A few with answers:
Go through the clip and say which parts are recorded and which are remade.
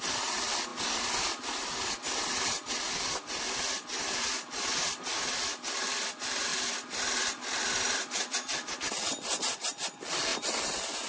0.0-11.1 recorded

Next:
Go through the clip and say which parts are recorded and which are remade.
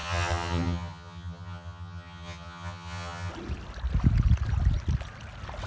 0.0-3.3 remade; 3.3-5.7 recorded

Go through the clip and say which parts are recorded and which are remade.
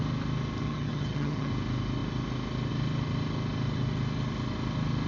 0.0-0.6 recorded; 0.6-1.5 remade; 1.5-5.1 recorded